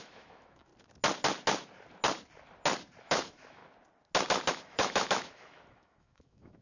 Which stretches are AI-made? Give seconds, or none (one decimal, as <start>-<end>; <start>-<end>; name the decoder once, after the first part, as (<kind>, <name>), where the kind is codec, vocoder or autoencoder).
0.0-0.7 (autoencoder, DAC-VAE); 3.0-3.6; 4.5-6.6